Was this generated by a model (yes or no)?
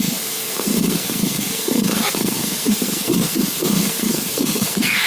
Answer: yes